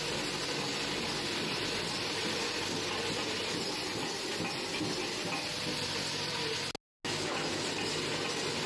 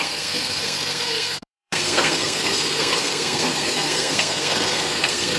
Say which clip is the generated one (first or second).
second